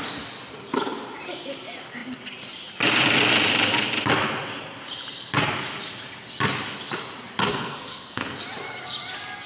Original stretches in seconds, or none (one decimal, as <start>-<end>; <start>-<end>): 0.0-7.5; 8.4-9.5